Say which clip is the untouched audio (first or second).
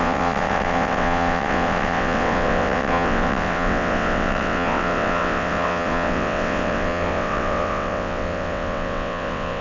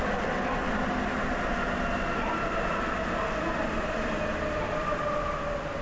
second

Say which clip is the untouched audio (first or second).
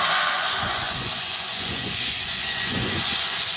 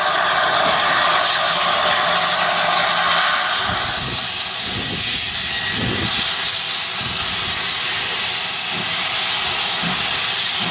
second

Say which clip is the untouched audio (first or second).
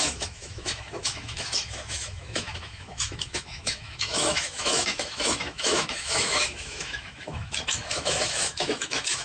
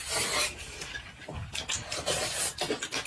second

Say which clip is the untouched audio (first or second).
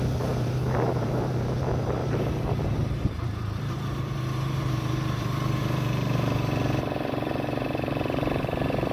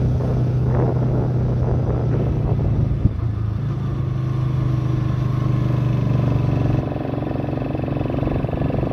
second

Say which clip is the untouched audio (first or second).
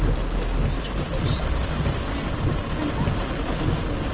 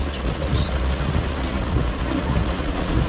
first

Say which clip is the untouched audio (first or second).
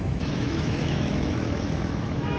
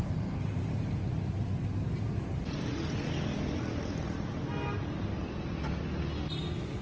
second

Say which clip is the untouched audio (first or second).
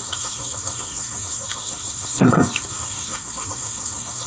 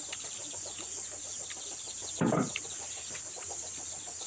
second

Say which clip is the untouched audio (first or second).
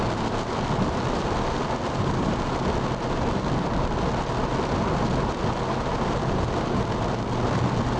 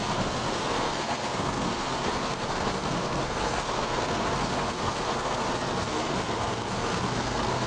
first